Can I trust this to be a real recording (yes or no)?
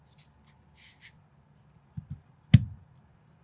yes